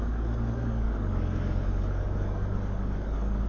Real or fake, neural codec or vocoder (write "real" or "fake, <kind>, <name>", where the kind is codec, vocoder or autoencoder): fake, codec, DAC